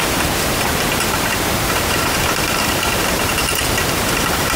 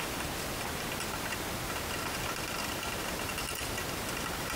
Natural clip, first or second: second